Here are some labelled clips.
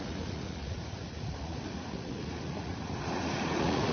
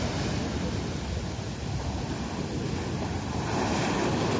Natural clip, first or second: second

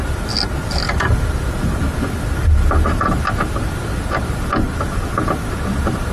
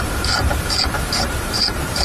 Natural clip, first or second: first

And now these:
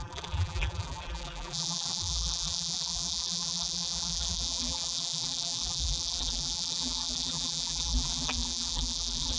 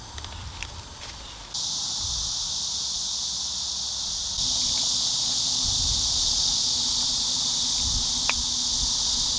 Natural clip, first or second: second